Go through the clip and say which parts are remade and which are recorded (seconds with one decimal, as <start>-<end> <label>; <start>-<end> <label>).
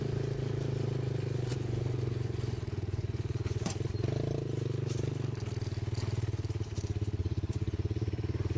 0.0-1.5 recorded; 1.5-3.7 remade; 3.7-7.2 recorded; 7.2-8.6 remade